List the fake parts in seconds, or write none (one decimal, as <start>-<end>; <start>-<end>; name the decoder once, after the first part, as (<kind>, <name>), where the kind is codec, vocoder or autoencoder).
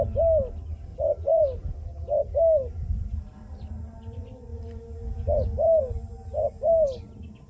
0.9-1.4 (vocoder, Vocos)